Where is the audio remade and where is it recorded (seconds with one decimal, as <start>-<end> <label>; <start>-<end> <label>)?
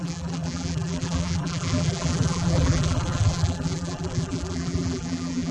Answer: 0.0-5.5 remade